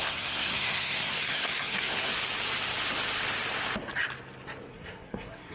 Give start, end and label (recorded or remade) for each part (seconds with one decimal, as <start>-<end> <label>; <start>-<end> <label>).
0.0-2.1 remade; 2.1-4.7 recorded; 4.7-5.5 remade